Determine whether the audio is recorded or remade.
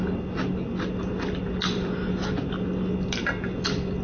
recorded